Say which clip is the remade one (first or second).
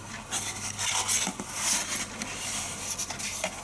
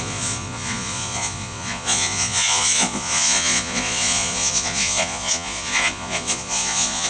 second